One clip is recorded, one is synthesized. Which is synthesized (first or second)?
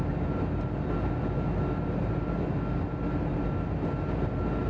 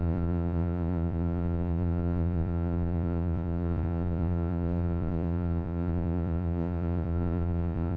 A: second